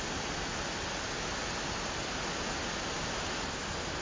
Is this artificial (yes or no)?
no